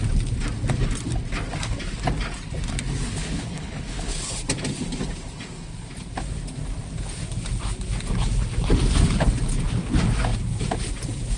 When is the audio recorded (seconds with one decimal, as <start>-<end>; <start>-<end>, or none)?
0.0-3.1; 4.2-11.4